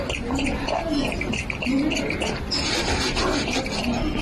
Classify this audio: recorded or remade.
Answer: recorded